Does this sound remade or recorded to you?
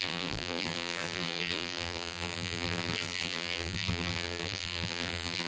remade